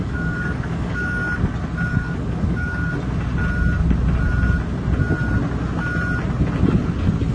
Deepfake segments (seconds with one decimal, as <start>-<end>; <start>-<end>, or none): 0.0-1.2; 1.9-2.9